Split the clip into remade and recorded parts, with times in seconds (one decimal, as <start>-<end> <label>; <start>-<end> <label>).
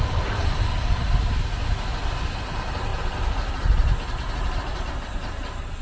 0.0-5.8 recorded